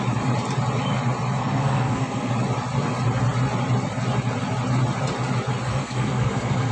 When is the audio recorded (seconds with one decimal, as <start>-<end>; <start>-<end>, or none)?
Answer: 0.0-1.4; 2.3-5.7